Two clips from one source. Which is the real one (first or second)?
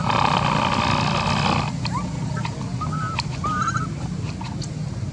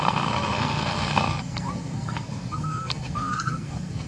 first